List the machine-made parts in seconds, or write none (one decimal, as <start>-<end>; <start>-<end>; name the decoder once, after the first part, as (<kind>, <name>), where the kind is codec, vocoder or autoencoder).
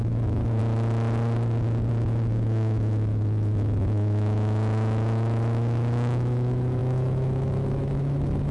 0.0-0.6 (autoencoder, DAC-VAE); 1.9-8.5